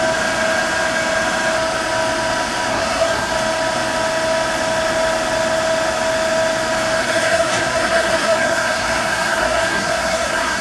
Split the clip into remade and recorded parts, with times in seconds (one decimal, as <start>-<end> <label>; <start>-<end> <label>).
0.0-2.7 recorded; 2.7-3.3 remade; 3.3-7.0 recorded; 7.0-10.6 remade